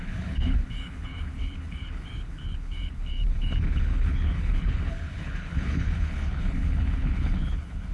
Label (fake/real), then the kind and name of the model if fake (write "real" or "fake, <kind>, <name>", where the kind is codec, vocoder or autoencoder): fake, codec, HILCodec